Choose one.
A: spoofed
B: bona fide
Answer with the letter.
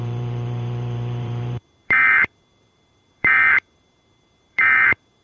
A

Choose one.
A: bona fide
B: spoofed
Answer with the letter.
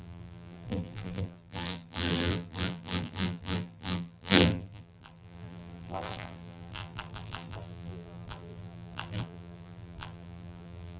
B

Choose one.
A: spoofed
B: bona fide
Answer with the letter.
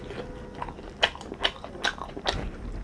B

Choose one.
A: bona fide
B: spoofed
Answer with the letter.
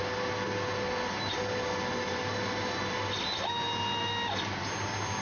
A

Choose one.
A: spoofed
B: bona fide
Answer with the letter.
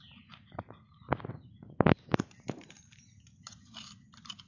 A